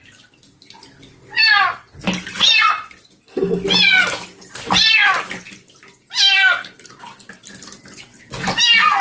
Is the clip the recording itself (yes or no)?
yes